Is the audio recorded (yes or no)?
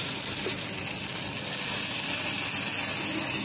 yes